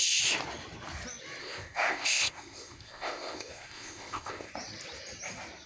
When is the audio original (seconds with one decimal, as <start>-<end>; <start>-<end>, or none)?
0.0-1.4; 4.5-5.7